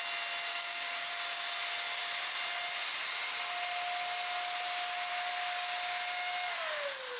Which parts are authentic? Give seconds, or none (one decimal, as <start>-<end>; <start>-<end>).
0.0-0.5; 1.1-7.2